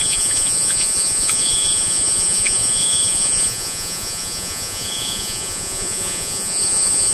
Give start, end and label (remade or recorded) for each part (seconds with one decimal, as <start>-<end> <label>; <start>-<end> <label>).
0.0-7.1 remade